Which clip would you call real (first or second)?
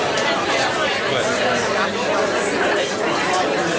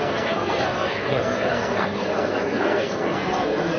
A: first